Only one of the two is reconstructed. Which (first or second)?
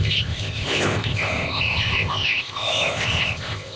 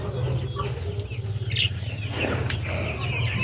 first